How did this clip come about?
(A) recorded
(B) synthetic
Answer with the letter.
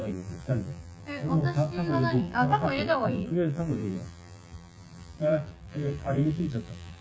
B